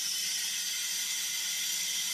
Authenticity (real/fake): real